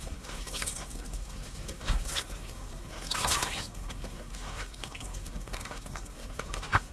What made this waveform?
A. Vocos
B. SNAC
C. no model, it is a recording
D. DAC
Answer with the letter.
B